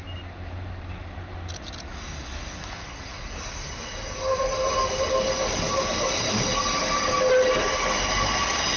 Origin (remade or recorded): recorded